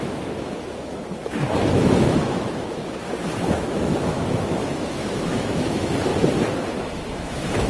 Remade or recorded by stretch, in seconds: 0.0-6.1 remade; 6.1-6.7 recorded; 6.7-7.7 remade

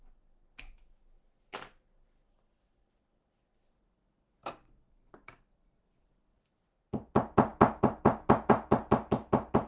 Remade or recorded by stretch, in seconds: 0.0-9.7 recorded

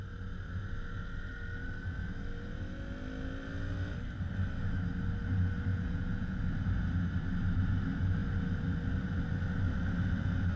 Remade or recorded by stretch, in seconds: 0.0-5.7 recorded; 5.7-6.4 remade; 6.4-10.6 recorded

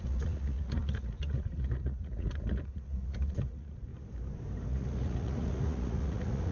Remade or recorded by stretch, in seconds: 0.0-3.9 remade; 3.9-4.7 recorded; 4.7-6.5 remade